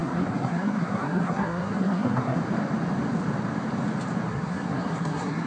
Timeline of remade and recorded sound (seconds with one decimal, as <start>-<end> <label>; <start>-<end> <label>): 0.0-2.4 remade; 2.4-4.3 recorded; 4.3-5.5 remade